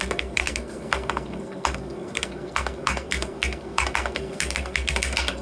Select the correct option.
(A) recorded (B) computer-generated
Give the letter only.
B